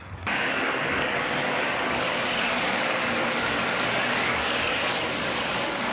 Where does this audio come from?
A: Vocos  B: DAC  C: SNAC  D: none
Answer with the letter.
B